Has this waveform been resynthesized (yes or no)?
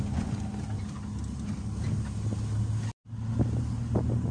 no